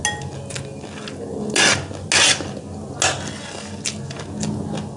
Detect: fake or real real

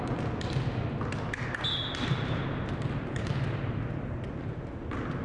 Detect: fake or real real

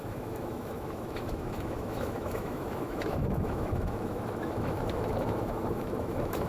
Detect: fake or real fake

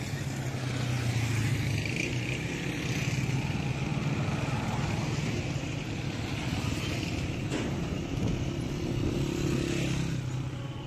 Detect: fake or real real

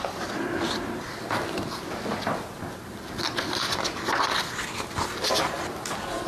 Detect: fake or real real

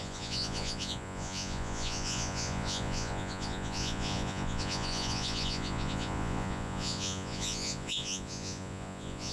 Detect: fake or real fake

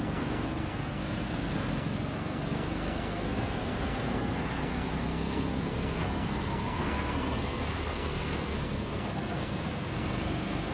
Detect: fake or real fake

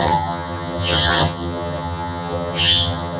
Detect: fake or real fake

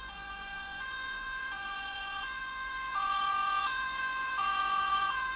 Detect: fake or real fake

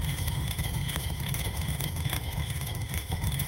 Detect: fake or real fake